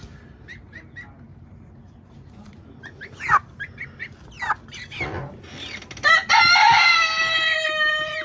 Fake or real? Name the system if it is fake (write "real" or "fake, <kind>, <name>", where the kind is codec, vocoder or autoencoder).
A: real